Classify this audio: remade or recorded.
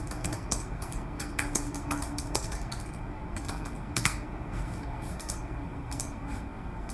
remade